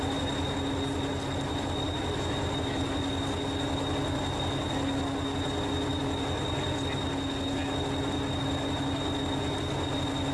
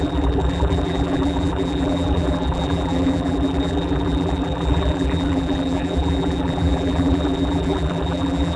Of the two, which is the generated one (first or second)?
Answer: second